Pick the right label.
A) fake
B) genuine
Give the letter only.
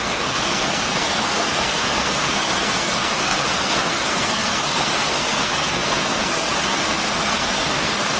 A